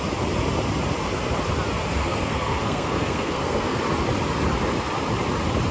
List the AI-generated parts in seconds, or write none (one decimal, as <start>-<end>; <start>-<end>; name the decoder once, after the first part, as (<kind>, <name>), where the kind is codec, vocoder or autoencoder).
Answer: 2.0-3.8 (codec, SNAC)